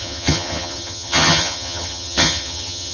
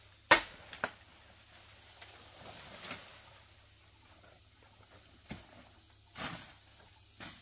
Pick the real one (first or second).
second